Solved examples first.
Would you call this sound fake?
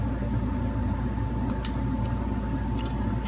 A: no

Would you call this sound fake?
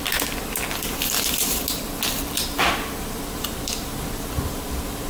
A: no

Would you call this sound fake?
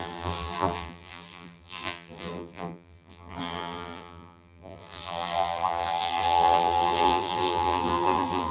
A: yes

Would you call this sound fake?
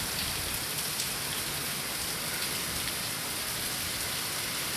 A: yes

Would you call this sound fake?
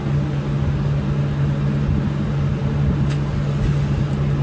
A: no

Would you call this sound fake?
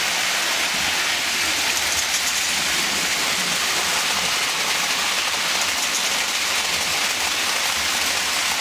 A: yes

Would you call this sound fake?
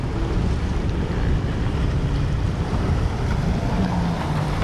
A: yes